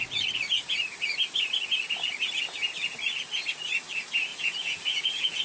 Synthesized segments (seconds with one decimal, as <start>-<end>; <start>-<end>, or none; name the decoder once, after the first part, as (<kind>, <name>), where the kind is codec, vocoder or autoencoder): 4.3-5.4 (vocoder, Vocos)